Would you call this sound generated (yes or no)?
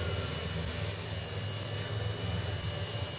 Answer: no